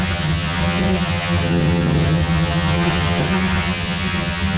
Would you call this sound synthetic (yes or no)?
yes